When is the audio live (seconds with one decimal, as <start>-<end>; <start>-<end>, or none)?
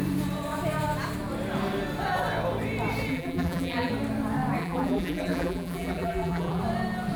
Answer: 0.0-3.1; 3.9-4.6; 6.6-7.2